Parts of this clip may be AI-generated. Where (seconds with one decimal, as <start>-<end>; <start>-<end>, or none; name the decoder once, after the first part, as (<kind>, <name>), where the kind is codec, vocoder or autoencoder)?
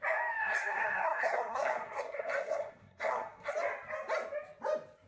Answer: 0.4-3.5 (codec, SNAC)